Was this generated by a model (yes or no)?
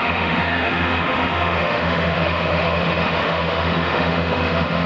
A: yes